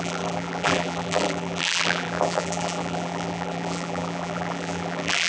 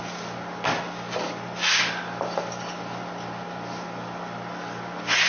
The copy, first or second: first